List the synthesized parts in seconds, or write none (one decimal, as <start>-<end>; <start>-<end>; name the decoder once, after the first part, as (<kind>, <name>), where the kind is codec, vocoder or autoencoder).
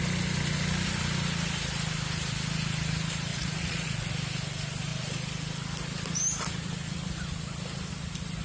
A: 3.3-4.1 (vocoder, Vocos)